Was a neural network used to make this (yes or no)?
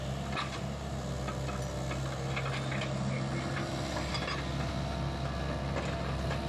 no